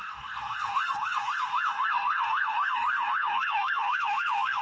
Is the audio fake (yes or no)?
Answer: yes